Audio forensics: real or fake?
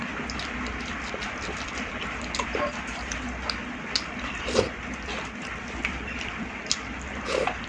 real